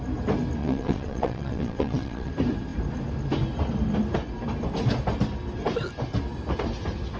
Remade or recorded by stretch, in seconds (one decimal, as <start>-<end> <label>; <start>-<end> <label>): 0.0-0.6 recorded; 0.6-2.3 remade; 2.3-7.2 recorded